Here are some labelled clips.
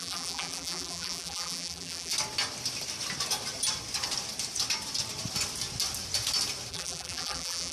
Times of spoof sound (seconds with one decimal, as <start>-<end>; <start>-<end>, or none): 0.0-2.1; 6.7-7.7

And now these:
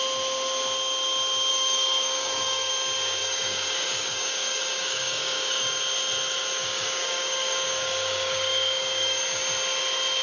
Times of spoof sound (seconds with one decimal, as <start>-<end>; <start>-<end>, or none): 1.5-2.7; 3.2-5.8; 6.6-9.2

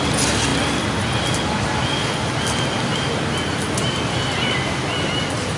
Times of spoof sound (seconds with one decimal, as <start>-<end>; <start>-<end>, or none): none

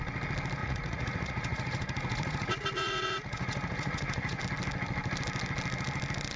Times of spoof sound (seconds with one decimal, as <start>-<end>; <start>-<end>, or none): 0.6-4.4